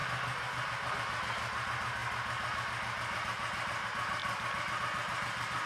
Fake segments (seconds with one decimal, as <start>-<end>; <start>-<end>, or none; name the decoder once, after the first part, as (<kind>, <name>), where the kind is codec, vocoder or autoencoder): 4.2-4.8 (vocoder, BigVGAN v2)